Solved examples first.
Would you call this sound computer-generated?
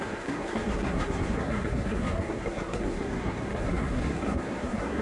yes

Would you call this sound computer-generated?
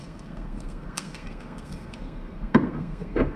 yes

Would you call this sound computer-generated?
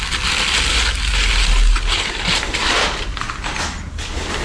no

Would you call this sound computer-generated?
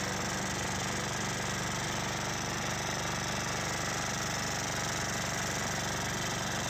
no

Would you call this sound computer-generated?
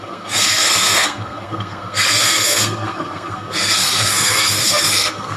yes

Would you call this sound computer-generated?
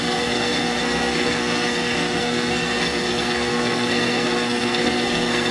yes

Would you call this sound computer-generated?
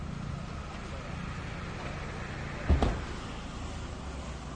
no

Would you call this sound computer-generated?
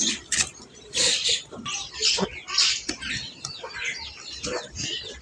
no